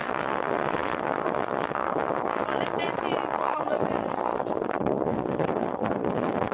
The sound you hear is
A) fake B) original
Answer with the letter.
A